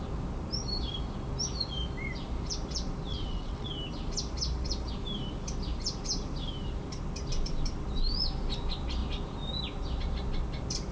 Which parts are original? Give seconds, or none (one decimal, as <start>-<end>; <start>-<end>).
0.0-3.1; 3.7-10.9